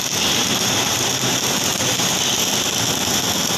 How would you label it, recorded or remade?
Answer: recorded